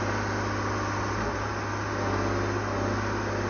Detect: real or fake real